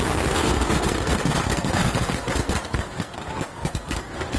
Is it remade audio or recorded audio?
remade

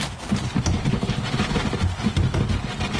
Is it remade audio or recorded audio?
recorded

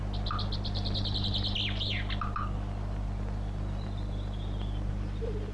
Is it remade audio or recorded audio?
recorded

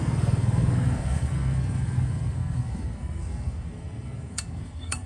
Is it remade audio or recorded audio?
remade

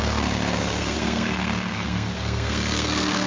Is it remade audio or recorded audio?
remade